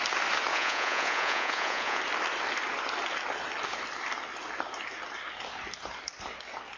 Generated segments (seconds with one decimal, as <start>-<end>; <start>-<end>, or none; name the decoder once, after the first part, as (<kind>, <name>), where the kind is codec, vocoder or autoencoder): 0.5-2.0 (vocoder, Vocos)